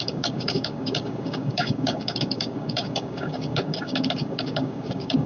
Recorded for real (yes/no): no